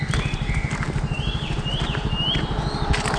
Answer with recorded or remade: recorded